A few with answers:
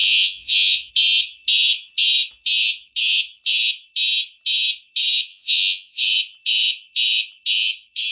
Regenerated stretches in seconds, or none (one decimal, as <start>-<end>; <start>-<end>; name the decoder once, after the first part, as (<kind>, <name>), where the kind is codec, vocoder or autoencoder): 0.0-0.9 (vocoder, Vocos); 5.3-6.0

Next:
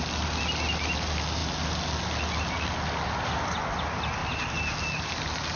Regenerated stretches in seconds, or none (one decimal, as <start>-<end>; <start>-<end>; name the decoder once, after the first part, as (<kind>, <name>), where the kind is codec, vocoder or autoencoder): none

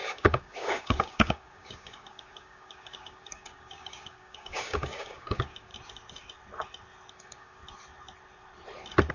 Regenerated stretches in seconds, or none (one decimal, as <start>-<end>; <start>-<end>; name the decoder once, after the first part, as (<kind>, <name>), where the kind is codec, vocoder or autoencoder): 0.0-5.7 (codec, DAC); 7.1-7.6

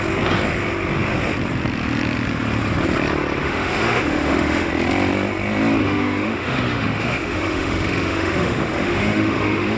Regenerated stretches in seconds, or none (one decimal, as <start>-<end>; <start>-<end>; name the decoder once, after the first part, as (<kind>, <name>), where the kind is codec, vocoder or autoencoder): 3.4-4.7 (autoencoder, DAC-VAE); 5.8-9.8

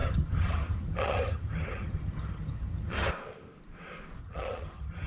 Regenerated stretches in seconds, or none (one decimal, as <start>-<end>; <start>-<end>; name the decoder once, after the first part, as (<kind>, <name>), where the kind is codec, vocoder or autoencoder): 0.0-3.1 (vocoder, HiFi-GAN); 4.2-5.1